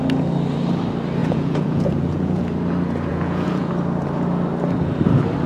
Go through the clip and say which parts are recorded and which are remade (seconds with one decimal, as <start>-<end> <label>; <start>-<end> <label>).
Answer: 0.0-1.2 recorded; 1.2-2.4 remade; 2.4-3.1 recorded; 3.1-3.7 remade; 3.7-5.5 recorded